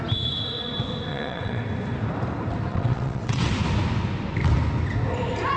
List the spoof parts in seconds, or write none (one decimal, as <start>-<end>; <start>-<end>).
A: 1.1-1.6; 2.7-3.5